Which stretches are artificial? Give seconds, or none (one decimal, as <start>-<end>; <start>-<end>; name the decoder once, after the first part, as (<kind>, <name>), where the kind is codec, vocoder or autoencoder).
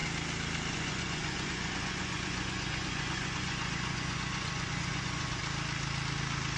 0.7-5.4 (vocoder, Vocos)